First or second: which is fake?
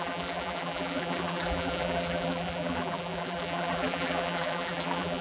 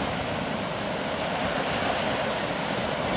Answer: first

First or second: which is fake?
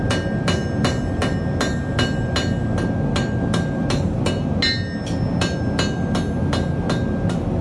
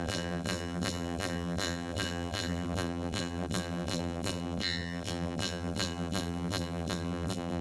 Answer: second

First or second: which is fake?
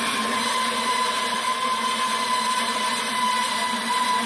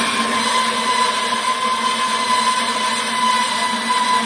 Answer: first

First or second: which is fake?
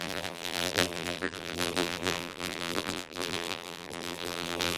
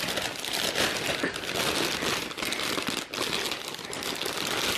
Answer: first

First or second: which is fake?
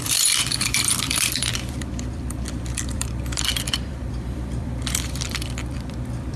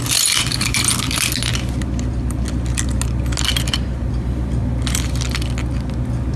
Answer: first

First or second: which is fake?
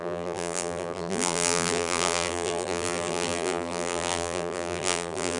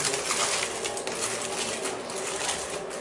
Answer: first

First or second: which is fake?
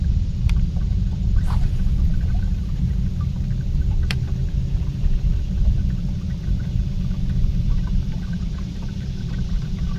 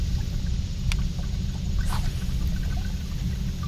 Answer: first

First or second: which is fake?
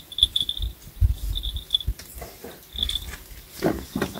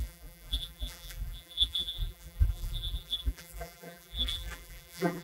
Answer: second